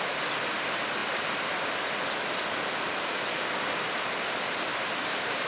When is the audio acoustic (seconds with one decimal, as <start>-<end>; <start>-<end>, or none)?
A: 0.0-5.5